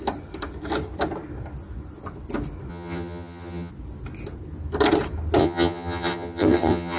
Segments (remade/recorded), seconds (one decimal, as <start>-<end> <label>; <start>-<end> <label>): 0.0-2.7 recorded; 2.7-3.7 remade; 3.7-5.4 recorded; 5.4-7.0 remade